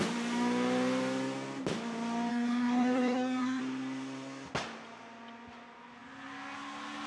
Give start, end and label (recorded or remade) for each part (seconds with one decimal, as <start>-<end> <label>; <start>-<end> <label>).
0.0-2.3 recorded; 2.3-3.6 remade; 3.6-7.1 recorded